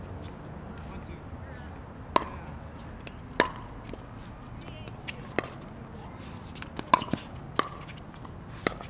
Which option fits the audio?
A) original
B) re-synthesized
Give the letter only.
A